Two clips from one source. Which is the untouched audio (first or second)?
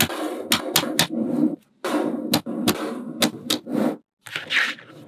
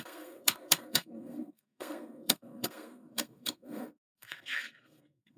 first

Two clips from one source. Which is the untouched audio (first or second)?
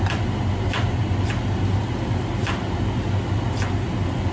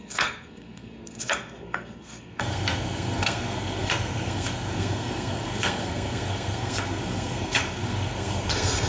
first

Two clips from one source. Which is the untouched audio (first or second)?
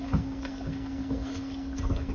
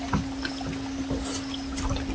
second